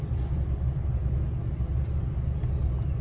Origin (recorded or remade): recorded